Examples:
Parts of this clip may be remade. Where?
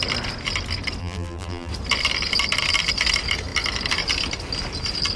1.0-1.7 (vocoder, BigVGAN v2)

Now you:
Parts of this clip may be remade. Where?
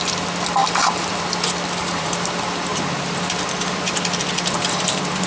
0.6-1.2 (vocoder, BigVGAN v2); 1.8-2.3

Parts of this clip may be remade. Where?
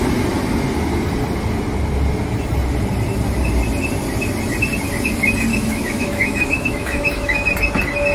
5.5-7.5 (autoencoder, DAC-VAE)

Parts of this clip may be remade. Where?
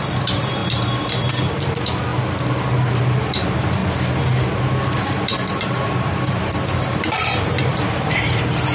0.0-2.1 (vocoder, BigVGAN v2); 2.9-3.8; 5.0-8.7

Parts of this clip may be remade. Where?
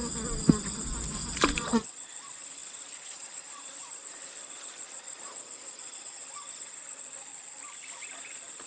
1.6-7.3 (vocoder, Vocos); 8.0-8.7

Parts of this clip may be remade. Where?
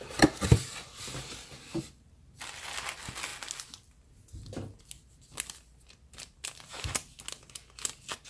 none